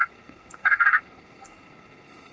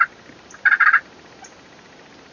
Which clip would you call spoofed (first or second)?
first